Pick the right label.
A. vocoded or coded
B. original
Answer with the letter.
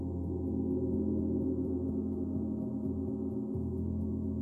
B